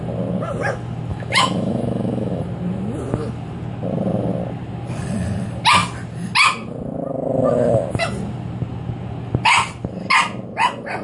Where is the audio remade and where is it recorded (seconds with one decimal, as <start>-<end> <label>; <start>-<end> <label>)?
0.0-1.1 recorded; 1.1-2.4 remade; 2.4-11.0 recorded